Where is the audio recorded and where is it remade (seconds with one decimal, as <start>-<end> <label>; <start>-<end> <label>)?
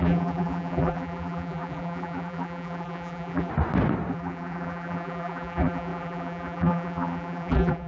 0.0-3.5 remade; 3.5-4.1 recorded; 4.1-7.9 remade